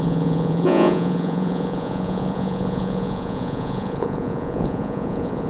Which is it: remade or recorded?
remade